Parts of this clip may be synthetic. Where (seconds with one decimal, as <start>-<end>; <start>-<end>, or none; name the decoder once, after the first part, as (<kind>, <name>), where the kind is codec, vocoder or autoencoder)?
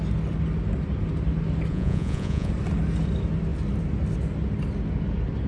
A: 1.7-2.5 (vocoder, Vocos)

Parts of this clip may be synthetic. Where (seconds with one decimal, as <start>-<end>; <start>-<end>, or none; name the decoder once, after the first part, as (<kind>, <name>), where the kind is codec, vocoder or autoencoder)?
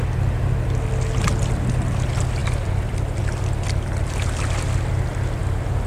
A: none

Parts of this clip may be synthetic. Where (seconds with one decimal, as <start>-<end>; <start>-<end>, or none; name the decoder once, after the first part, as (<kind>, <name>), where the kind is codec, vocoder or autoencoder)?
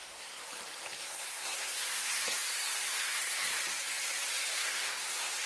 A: 0.0-0.4 (codec, SNAC); 1.0-3.6; 4.5-5.5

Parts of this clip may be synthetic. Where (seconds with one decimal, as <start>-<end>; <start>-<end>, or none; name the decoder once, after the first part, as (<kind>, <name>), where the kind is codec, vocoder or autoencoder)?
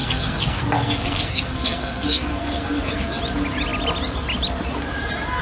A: 0.0-3.2 (codec, SNAC)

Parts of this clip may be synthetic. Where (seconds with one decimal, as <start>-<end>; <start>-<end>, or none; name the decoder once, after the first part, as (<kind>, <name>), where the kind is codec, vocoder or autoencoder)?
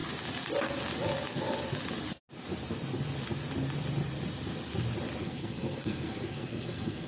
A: 5.2-7.1 (codec, SNAC)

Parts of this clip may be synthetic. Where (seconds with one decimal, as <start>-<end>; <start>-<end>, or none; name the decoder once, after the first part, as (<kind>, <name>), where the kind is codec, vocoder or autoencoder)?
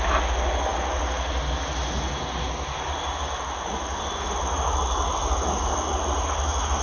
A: none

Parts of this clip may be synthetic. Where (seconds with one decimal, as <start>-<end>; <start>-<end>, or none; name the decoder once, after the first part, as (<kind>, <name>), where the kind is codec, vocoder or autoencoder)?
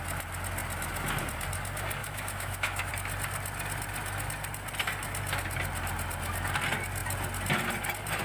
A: 2.0-2.9 (autoencoder, DAC-VAE)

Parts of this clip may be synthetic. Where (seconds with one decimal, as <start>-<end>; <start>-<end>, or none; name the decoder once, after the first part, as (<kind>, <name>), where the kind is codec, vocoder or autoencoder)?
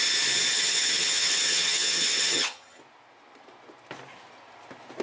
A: 0.5-2.8 (vocoder, HiFi-GAN)